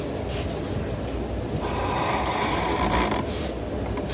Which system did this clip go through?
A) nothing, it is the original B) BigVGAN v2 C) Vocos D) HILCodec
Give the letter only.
A